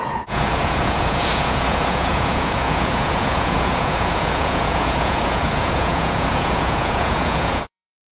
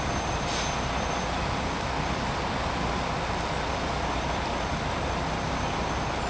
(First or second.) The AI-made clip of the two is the first